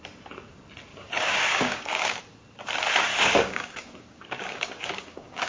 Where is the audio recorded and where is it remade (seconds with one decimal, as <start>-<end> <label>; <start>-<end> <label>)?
0.0-0.9 recorded; 0.9-2.2 remade; 2.2-3.1 recorded; 3.1-5.5 remade